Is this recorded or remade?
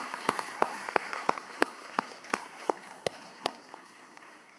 remade